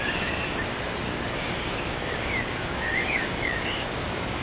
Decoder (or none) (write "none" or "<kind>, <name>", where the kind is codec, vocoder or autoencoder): codec, DAC